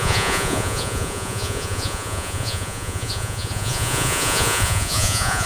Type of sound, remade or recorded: remade